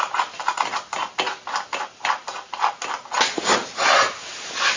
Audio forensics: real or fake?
real